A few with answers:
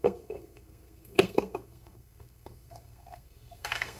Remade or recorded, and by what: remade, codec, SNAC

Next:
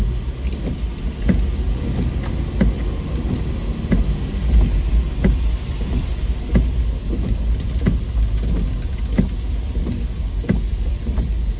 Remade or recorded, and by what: recorded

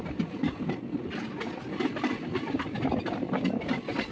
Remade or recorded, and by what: recorded